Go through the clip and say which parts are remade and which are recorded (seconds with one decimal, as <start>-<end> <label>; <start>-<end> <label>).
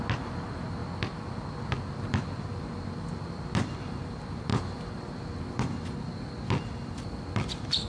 0.0-7.9 recorded